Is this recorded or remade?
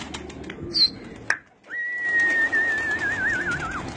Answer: recorded